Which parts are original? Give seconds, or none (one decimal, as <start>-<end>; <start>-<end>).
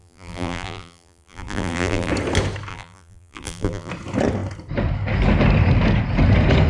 2.1-2.7; 3.9-6.7